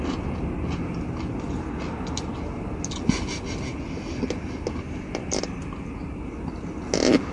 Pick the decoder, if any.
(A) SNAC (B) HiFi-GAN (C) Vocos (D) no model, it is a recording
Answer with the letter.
D